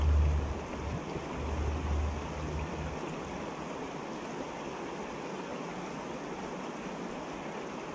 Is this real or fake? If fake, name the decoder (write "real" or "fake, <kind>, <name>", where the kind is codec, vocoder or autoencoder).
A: real